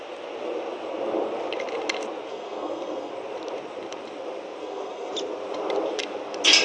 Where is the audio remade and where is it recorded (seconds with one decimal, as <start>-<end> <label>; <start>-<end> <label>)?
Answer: 0.0-2.3 recorded; 2.3-3.1 remade; 3.1-4.6 recorded; 4.6-5.1 remade; 5.1-6.6 recorded